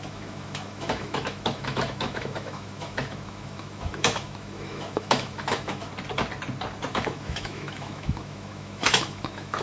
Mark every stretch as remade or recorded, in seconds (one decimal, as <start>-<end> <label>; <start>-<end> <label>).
0.0-5.9 remade; 5.9-6.9 recorded; 6.9-9.6 remade

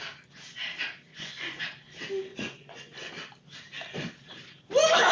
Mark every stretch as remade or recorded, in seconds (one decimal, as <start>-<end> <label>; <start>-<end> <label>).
0.0-1.1 recorded; 1.1-1.6 remade; 1.6-2.3 recorded; 2.3-3.1 remade; 3.1-5.1 recorded

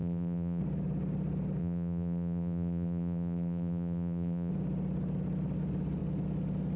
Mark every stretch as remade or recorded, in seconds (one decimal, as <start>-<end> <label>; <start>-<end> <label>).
0.0-0.6 remade; 0.6-1.6 recorded; 1.6-4.5 remade; 4.5-6.8 recorded